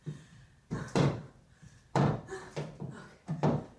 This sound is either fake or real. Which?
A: fake